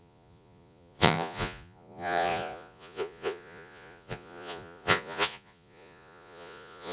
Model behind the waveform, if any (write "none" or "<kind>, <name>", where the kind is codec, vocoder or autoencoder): vocoder, Vocos